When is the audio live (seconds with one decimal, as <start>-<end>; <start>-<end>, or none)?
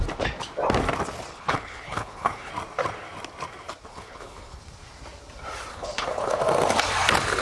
0.0-1.3; 2.5-3.9; 4.6-5.7; 6.4-7.4